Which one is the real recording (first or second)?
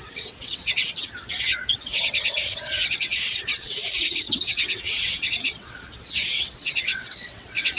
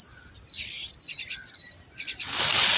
second